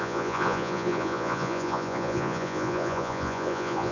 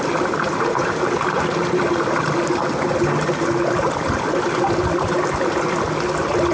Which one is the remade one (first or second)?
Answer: first